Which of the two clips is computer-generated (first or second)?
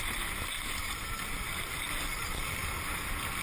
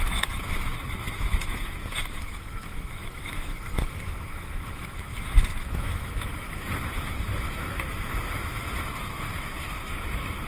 second